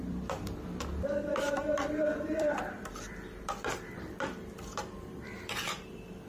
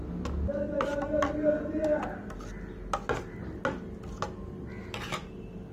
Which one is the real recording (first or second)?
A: second